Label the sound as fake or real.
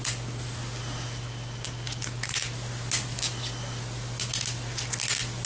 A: real